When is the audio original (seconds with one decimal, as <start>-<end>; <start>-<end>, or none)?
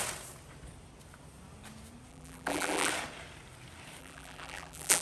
0.0-2.1; 2.9-4.0